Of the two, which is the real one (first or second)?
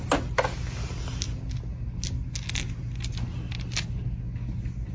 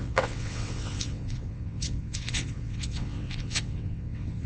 first